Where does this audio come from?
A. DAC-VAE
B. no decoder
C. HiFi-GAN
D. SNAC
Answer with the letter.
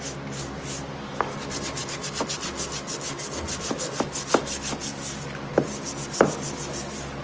B